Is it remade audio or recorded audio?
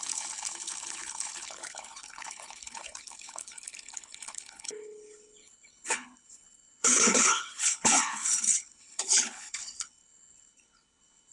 remade